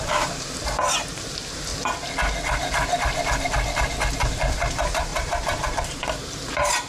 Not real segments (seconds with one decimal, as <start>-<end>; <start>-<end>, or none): 0.0-1.7; 4.2-6.9